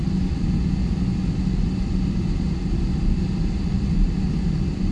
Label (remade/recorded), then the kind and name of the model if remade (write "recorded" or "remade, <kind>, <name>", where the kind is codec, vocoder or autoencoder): recorded